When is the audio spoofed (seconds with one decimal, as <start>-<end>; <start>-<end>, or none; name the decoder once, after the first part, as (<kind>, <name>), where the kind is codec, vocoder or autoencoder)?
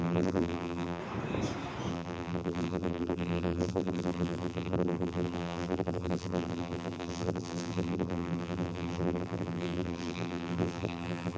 0.0-1.0 (vocoder, BigVGAN v2); 1.9-11.4